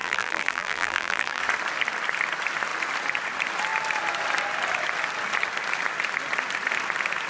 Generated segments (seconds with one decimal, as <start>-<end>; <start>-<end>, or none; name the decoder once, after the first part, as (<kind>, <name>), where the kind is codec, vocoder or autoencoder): 0.0-1.4 (vocoder, BigVGAN v2)